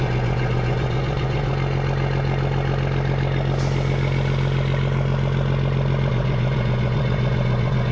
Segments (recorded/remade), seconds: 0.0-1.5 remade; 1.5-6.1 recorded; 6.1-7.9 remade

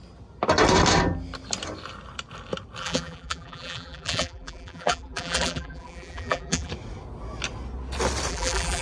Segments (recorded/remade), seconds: 0.0-2.8 recorded; 2.8-6.7 remade; 6.7-8.3 recorded; 8.3-8.8 remade

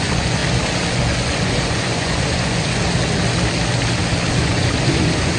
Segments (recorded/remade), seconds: 0.0-0.4 remade; 0.4-0.9 recorded; 0.9-2.8 remade; 2.8-4.3 recorded; 4.3-5.4 remade

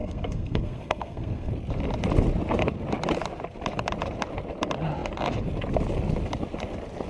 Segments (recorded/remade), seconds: 0.0-1.5 remade; 1.5-7.1 recorded

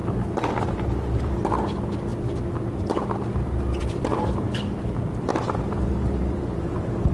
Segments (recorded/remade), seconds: 0.0-0.7 recorded; 0.7-7.1 remade

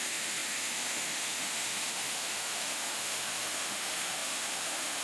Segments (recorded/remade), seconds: 0.0-5.0 remade